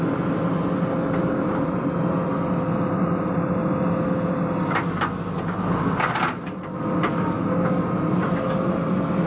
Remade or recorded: recorded